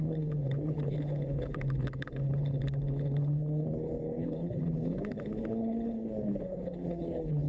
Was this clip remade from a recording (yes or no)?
yes